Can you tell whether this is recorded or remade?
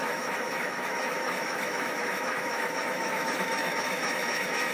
remade